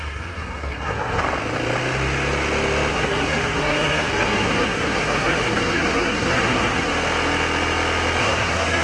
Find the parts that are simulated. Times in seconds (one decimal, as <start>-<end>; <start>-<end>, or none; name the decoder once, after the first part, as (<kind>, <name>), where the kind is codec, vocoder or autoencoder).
0.0-1.2 (codec, SNAC); 2.9-6.9; 8.2-8.8